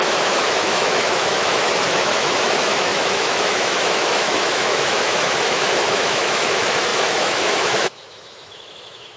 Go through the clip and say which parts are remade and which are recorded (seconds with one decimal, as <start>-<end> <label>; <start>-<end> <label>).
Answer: 0.0-9.2 remade